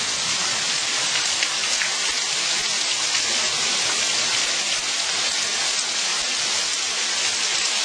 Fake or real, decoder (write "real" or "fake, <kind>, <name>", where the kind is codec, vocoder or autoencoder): real